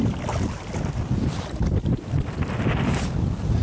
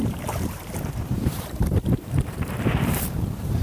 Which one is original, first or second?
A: first